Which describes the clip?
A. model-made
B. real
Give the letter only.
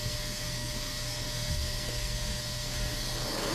A